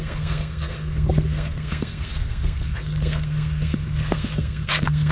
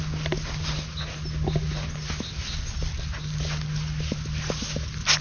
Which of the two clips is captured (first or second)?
second